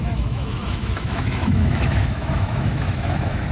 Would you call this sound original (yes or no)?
no